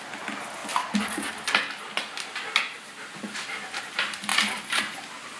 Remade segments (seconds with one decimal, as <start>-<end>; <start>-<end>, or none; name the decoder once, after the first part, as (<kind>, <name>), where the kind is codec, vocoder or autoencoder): none